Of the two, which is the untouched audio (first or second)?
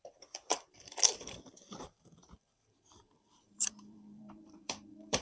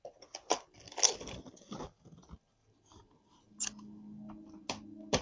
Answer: second